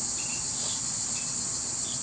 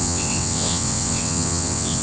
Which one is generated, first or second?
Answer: second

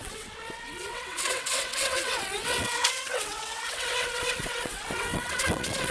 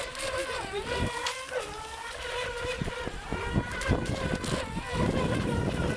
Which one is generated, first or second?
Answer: first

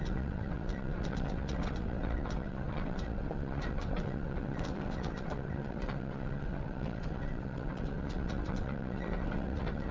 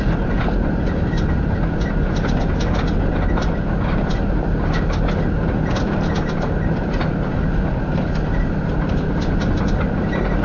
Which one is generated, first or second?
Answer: first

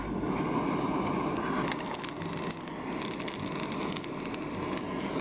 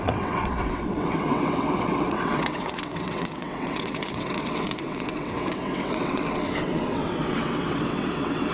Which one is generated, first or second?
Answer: second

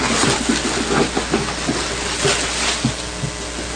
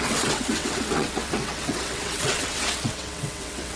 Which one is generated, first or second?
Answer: second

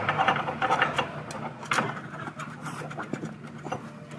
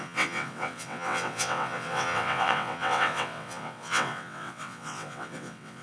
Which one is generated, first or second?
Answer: second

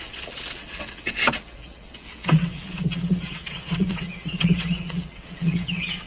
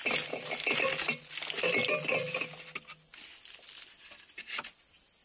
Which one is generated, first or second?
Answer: first